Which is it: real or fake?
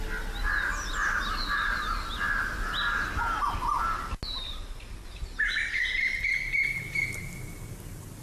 real